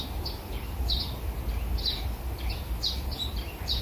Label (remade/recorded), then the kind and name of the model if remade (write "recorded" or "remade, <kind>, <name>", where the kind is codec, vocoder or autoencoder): recorded